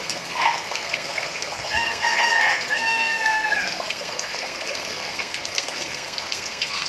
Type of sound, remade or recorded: remade